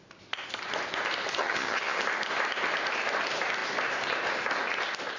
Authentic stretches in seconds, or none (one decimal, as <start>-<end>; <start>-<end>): 0.0-1.4; 2.0-5.2